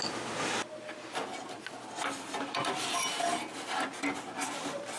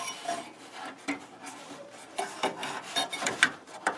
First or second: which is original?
first